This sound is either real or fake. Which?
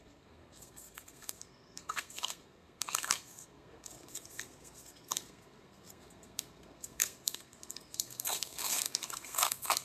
fake